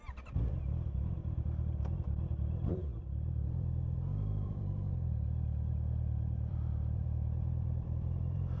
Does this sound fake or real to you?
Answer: fake